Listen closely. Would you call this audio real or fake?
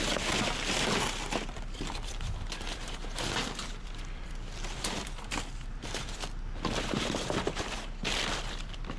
fake